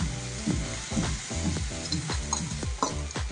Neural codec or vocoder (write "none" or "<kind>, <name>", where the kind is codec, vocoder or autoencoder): none